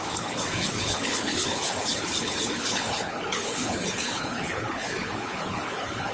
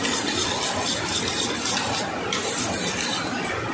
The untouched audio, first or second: second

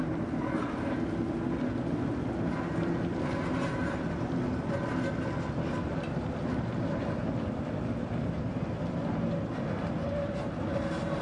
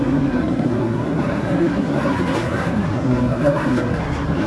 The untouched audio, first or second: first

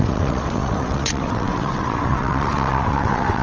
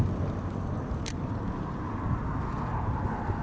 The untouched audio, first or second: second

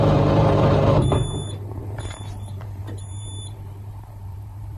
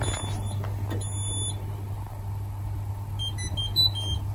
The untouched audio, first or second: second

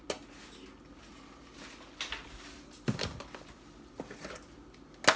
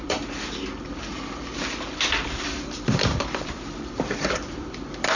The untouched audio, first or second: first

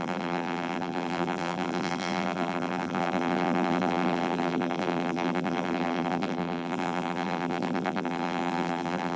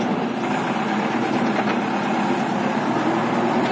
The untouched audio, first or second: second